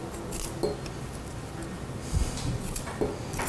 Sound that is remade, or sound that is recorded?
recorded